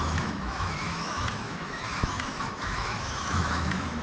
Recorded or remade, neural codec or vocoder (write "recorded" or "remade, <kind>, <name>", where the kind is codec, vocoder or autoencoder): remade, autoencoder, DAC-VAE